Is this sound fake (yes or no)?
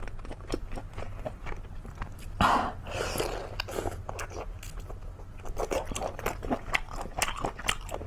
no